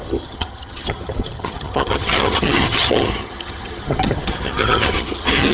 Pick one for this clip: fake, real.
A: fake